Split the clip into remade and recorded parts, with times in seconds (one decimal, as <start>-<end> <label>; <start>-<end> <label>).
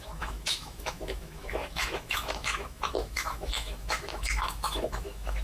0.0-5.4 remade